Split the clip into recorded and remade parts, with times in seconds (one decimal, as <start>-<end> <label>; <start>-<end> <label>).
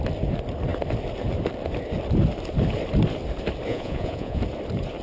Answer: 0.0-3.7 recorded; 3.7-4.4 remade; 4.4-5.0 recorded